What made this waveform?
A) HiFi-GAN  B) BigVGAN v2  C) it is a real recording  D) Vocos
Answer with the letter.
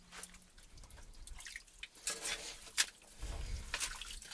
C